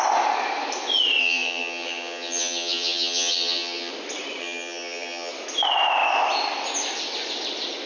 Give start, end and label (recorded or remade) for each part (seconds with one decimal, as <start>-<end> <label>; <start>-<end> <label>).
0.0-1.2 recorded; 1.2-3.9 remade; 3.9-4.4 recorded; 4.4-5.3 remade; 5.3-7.9 recorded